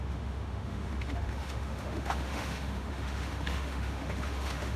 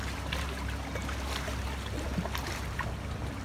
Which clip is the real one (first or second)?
second